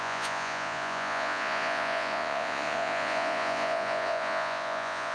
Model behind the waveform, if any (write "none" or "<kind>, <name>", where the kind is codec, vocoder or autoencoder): vocoder, Vocos